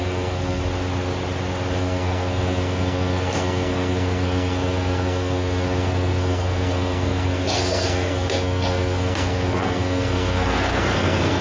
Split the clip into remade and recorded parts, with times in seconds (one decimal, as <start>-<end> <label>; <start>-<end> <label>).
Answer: 0.0-0.6 remade; 0.6-1.8 recorded; 1.8-11.4 remade